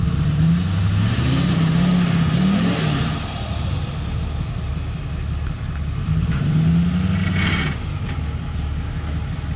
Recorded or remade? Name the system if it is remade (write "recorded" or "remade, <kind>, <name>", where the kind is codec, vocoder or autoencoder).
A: recorded